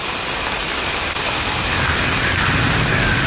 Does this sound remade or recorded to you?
recorded